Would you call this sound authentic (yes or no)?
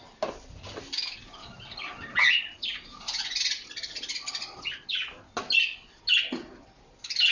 yes